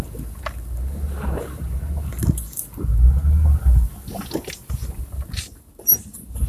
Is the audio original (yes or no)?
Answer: yes